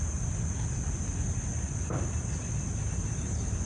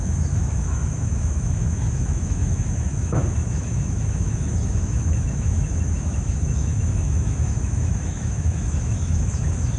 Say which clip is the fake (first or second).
second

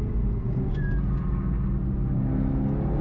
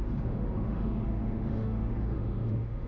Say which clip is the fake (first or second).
second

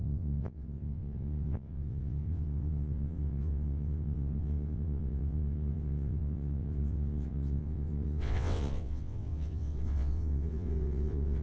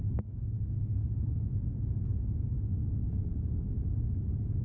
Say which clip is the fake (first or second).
first